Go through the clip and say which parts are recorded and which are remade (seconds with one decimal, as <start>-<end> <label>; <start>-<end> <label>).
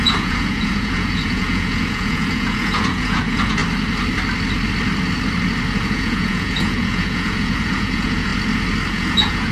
0.0-3.6 remade; 3.6-5.8 recorded; 5.8-8.3 remade; 8.3-8.9 recorded; 8.9-9.5 remade